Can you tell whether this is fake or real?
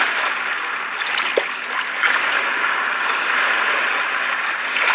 real